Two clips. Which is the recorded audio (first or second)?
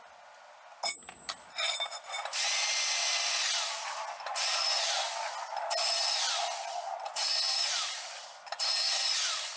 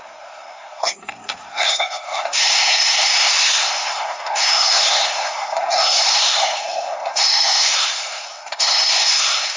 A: first